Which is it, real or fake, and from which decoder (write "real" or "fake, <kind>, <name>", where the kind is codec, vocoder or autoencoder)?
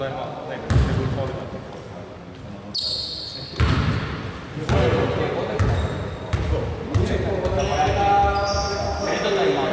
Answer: real